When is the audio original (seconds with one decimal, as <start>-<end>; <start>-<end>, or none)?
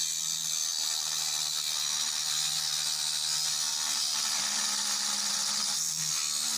0.0-6.6